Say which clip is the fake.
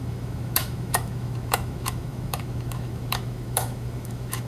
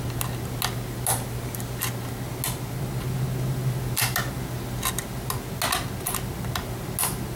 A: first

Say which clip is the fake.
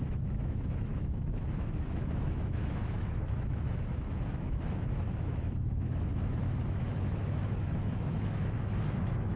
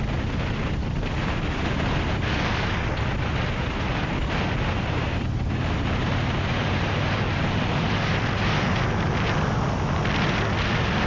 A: first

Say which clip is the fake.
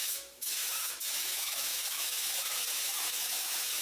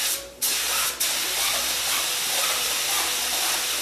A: first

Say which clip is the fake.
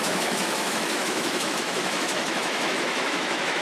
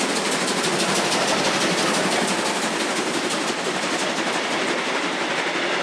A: first